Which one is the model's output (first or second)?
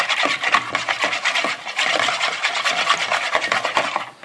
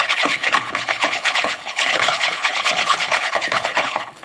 second